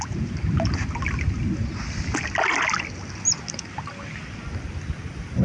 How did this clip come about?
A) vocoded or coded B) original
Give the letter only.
B